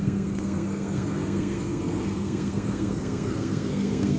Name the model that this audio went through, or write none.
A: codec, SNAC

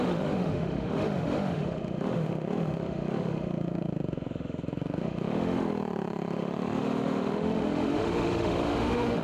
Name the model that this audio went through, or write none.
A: autoencoder, DAC-VAE